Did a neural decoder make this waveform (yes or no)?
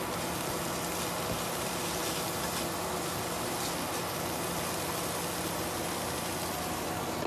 no